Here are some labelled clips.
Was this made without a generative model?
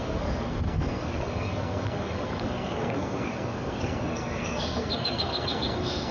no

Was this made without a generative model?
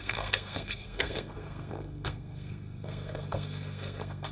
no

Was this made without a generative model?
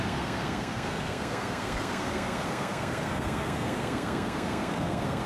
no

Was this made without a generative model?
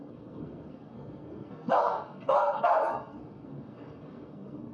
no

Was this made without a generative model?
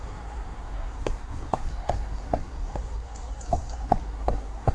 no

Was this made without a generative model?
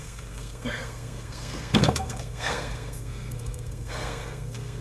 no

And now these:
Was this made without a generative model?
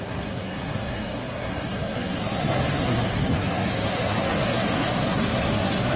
no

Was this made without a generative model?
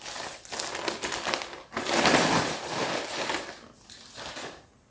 yes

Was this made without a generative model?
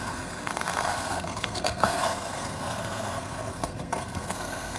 no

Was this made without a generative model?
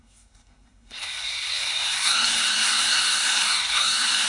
no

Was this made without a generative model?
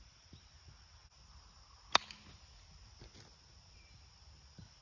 yes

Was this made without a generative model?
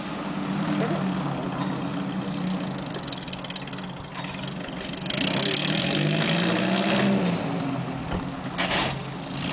yes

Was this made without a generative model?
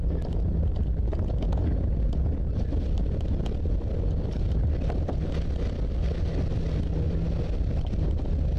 yes